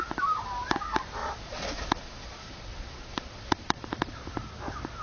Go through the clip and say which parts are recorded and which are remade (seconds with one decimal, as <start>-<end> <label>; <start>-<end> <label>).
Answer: 0.0-1.2 recorded; 1.2-4.2 remade; 4.2-5.0 recorded